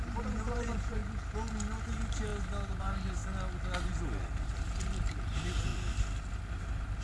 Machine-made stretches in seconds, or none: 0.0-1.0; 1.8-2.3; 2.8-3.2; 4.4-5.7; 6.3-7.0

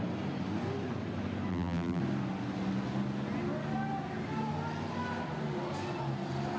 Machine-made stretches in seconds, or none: 1.5-2.0